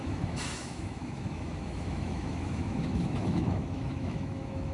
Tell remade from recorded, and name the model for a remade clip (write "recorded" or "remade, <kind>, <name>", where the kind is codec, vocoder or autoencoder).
remade, autoencoder, DAC-VAE